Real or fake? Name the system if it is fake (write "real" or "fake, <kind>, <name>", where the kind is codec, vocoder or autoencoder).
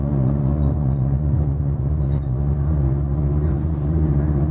fake, vocoder, Vocos